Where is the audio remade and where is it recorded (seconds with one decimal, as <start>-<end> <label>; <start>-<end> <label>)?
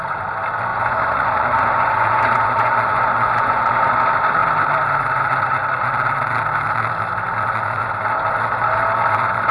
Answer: 0.0-0.7 recorded; 0.7-3.9 remade; 3.9-9.5 recorded